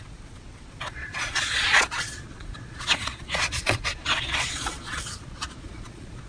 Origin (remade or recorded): remade